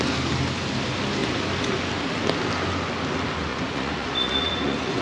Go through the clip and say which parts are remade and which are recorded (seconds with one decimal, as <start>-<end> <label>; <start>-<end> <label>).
0.0-3.5 recorded; 3.5-5.0 remade